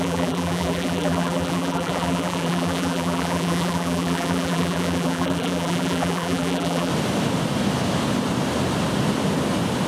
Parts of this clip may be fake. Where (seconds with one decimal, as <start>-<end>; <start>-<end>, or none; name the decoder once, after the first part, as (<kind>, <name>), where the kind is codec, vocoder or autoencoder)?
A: 0.0-6.9 (vocoder, BigVGAN v2)